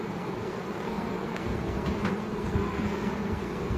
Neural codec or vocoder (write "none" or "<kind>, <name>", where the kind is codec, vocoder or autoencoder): codec, SNAC